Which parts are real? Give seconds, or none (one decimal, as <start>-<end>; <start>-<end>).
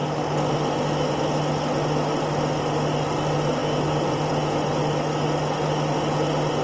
0.0-6.6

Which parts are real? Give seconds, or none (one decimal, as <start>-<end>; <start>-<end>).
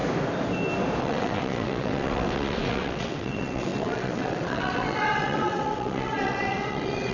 0.0-1.0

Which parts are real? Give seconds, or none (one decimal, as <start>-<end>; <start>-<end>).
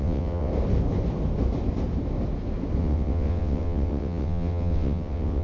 0.5-2.8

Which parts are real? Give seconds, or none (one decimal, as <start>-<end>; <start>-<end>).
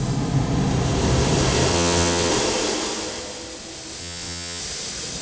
0.0-1.7; 2.3-4.0; 4.6-5.2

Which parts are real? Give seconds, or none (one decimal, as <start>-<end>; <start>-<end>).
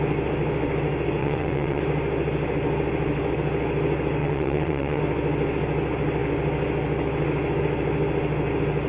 0.0-1.2; 1.8-4.2; 5.0-8.9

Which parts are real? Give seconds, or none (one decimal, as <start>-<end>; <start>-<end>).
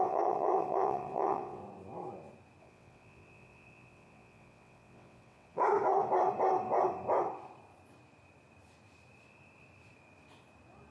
1.6-2.6; 5.6-10.9